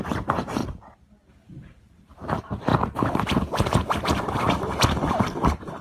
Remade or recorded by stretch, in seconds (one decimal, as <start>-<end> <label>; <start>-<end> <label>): 0.0-0.6 remade; 0.6-1.3 recorded; 1.3-5.8 remade